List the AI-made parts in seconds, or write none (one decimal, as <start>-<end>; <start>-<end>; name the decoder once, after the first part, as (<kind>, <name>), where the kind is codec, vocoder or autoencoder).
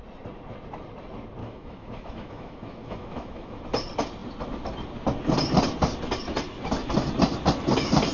1.4-3.6 (autoencoder, DAC-VAE)